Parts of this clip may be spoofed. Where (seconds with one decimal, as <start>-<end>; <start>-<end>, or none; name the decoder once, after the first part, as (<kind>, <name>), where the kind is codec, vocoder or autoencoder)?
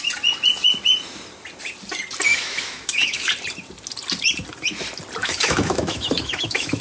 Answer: 2.3-3.3 (autoencoder, DAC-VAE); 5.2-6.8